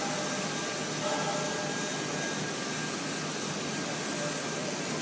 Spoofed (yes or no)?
no